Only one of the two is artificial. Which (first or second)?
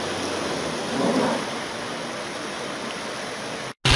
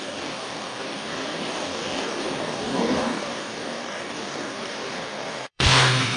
second